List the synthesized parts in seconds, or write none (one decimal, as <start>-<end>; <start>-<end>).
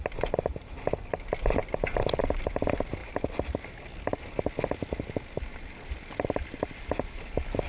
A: none